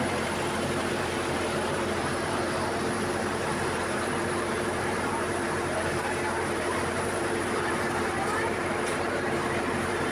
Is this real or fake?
fake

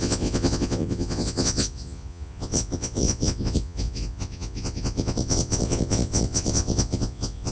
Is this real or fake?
fake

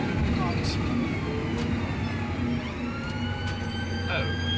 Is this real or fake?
real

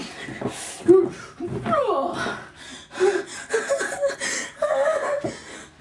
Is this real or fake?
real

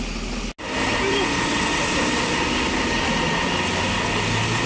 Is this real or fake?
real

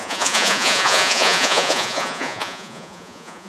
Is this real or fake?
fake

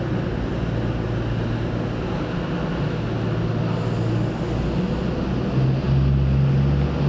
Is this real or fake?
real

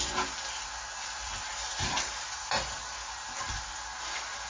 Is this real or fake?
real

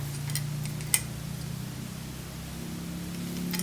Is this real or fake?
real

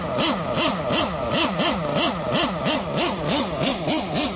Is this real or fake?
real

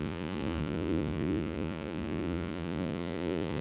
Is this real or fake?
fake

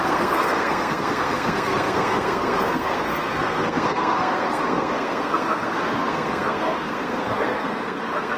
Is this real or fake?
fake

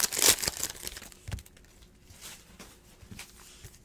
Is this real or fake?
real